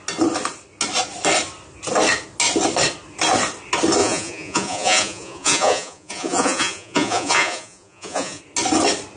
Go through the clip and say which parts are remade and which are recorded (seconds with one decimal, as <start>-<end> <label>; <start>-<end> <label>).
0.0-4.0 recorded; 4.0-8.4 remade; 8.4-9.2 recorded